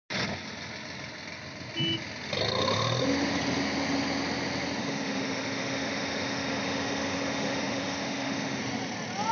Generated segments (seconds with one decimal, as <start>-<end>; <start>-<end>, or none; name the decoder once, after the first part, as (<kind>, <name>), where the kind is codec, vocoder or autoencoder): 4.8-8.6 (autoencoder, DAC-VAE)